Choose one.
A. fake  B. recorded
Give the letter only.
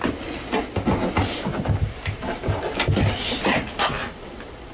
B